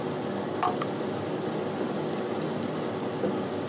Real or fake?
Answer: real